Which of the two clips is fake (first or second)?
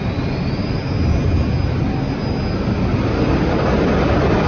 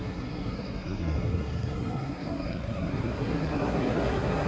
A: second